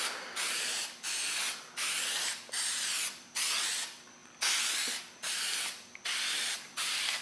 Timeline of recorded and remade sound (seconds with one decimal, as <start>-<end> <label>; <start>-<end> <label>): 0.0-7.2 recorded